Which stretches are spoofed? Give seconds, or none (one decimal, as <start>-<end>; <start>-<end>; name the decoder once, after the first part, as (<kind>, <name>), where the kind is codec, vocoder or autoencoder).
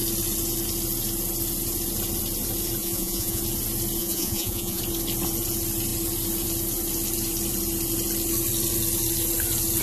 2.8-3.4 (vocoder, Vocos); 4.0-4.8